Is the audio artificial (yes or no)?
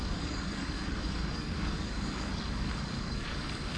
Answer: yes